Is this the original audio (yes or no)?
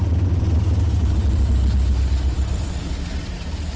no